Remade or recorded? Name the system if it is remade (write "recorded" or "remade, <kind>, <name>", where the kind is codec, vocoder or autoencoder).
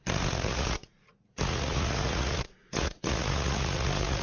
remade, vocoder, Vocos